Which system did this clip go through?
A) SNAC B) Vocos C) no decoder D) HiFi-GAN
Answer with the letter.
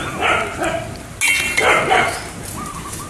C